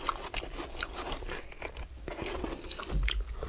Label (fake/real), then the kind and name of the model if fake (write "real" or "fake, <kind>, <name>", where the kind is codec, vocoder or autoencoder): real